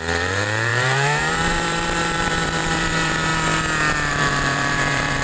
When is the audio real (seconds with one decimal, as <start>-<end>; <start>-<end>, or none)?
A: 3.3-4.1